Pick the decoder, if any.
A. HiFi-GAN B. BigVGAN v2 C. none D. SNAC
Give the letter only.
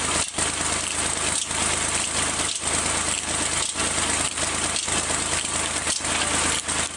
C